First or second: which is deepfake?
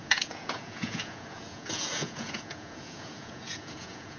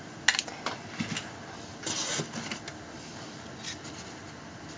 first